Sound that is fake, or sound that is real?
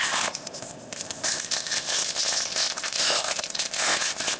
fake